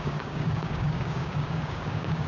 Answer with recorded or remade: remade